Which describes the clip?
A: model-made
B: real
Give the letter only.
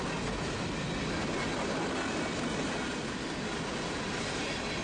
B